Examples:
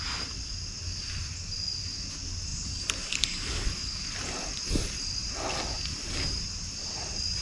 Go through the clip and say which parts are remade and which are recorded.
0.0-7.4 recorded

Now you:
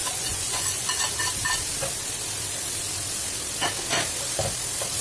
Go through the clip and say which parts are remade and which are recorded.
0.0-1.0 remade; 1.0-5.0 recorded

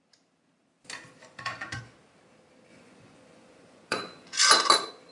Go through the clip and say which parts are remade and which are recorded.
0.0-1.2 recorded; 1.2-1.8 remade; 1.8-2.7 recorded; 2.7-4.4 remade; 4.4-5.1 recorded

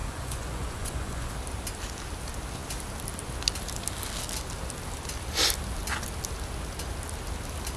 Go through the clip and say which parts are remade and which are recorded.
0.0-1.3 remade; 1.3-7.8 recorded

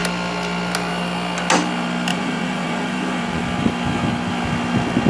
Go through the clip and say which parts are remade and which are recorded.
0.0-2.1 recorded; 2.1-3.4 remade; 3.4-5.1 recorded

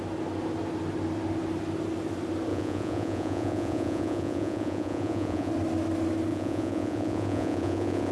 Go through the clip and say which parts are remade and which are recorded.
0.0-2.5 recorded; 2.5-5.5 remade; 5.5-6.3 recorded; 6.3-8.1 remade

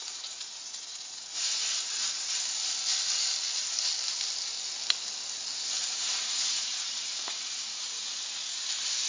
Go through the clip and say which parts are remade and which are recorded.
0.0-2.3 remade; 2.3-5.8 recorded; 5.8-8.4 remade; 8.4-9.1 recorded